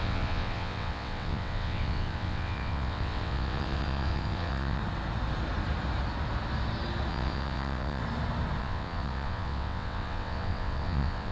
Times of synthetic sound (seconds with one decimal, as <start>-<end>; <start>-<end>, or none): 0.0-4.8; 7.1-8.0; 8.6-11.3